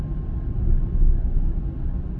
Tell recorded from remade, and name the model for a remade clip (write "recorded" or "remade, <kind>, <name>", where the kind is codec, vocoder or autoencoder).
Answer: recorded